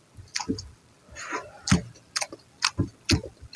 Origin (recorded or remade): recorded